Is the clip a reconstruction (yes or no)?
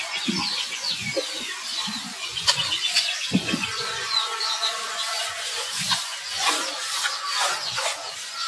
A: yes